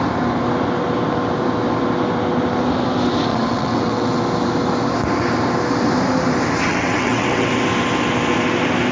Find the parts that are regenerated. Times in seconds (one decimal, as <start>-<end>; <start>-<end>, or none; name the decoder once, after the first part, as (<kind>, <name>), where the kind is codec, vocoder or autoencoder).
3.3-4.2 (vocoder, WaveNeXt); 6.7-7.5